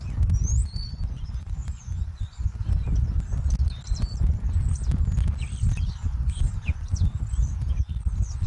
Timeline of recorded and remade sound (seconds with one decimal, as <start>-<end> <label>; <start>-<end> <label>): 0.0-0.6 recorded; 0.6-2.7 remade; 2.7-6.0 recorded; 6.0-7.2 remade; 7.2-8.5 recorded